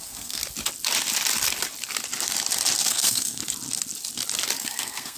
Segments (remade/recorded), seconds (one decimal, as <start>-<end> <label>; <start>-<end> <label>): 0.0-0.4 remade; 0.4-2.9 recorded; 2.9-3.4 remade; 3.4-4.6 recorded; 4.6-5.2 remade